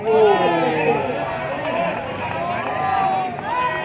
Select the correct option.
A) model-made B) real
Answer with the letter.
B